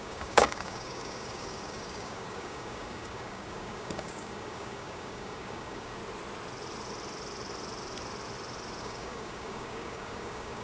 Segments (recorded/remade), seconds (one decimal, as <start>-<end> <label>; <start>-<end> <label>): 0.0-6.0 remade; 6.0-8.8 recorded; 8.8-10.6 remade

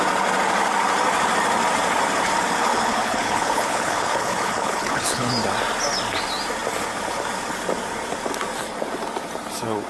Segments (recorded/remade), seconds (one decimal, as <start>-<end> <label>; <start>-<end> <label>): 0.0-2.6 recorded; 2.6-5.3 remade; 5.3-9.9 recorded